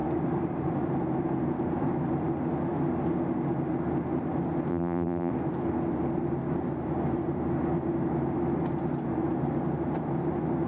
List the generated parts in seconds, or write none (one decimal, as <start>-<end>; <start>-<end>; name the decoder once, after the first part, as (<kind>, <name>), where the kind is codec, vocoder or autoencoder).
4.7-5.3 (vocoder, BigVGAN v2)